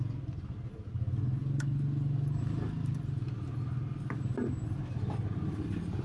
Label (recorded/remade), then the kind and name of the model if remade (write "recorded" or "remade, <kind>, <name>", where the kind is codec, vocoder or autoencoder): recorded